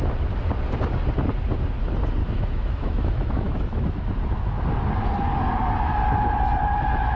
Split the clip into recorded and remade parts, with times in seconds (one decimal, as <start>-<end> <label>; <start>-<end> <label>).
0.0-2.2 recorded; 2.2-4.6 remade; 4.6-7.2 recorded